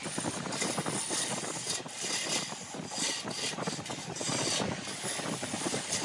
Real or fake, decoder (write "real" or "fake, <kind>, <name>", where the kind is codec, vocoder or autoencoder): real